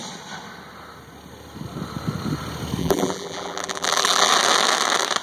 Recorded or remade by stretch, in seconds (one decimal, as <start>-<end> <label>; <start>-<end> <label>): 0.0-2.8 recorded; 2.8-4.3 remade; 4.3-5.2 recorded